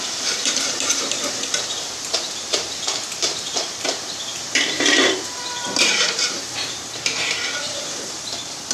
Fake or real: fake